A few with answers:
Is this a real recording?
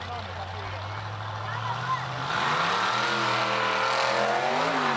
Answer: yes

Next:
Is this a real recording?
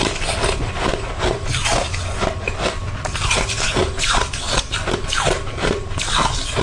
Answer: no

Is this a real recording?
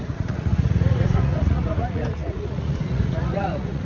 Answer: no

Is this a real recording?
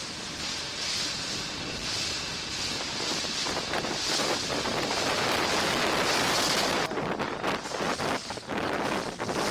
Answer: yes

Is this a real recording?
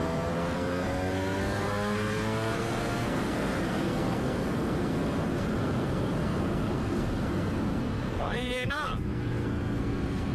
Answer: no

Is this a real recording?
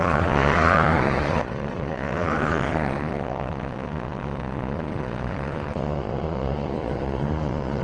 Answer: no